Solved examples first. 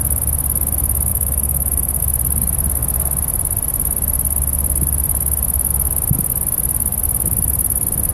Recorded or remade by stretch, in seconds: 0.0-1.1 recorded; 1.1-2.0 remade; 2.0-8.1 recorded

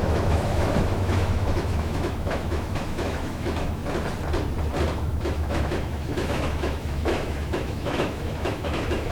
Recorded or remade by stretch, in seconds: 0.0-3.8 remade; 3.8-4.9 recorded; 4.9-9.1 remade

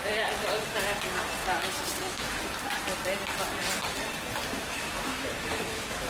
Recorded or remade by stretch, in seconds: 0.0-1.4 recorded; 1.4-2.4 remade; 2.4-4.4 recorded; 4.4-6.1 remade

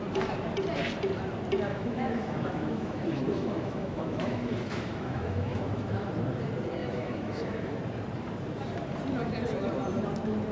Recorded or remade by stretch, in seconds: 0.0-1.7 recorded; 1.7-6.1 remade; 6.1-6.8 recorded; 6.8-7.8 remade; 7.8-10.5 recorded